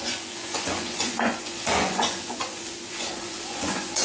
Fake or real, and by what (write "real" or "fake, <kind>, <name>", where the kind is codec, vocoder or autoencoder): fake, vocoder, Vocos